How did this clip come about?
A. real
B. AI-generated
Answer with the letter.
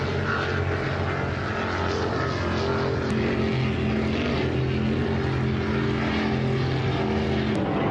A